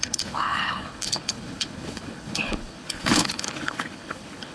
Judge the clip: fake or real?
fake